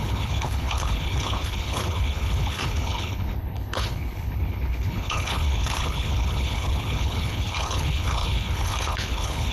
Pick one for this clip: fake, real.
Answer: fake